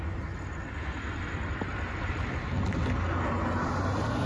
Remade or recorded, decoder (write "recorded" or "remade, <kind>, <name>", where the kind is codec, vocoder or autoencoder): recorded